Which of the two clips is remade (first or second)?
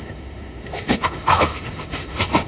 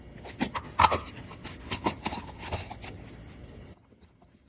first